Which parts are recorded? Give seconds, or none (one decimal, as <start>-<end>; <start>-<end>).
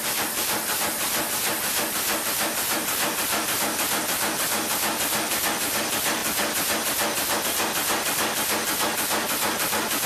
0.0-10.1